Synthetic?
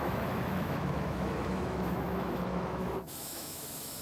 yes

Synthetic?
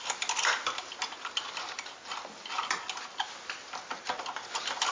no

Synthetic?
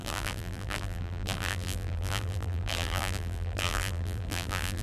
yes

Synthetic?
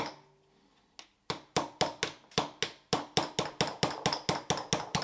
no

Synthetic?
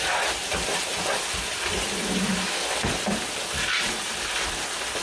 no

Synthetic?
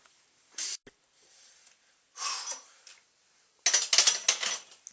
no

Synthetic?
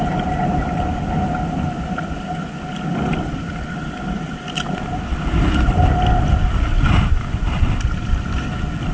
no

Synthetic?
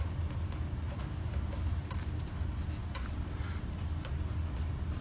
no